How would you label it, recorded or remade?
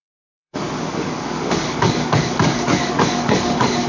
remade